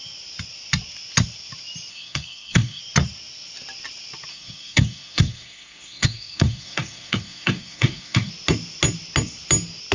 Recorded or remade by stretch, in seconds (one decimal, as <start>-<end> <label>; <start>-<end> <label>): 0.0-1.9 recorded; 1.9-2.8 remade; 2.8-4.3 recorded; 4.3-8.3 remade; 8.3-9.9 recorded